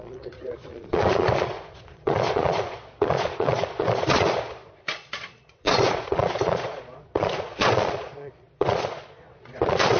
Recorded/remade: remade